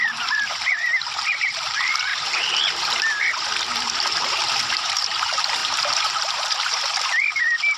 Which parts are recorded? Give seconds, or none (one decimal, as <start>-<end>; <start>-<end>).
none